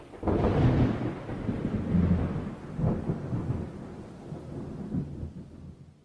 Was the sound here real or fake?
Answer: real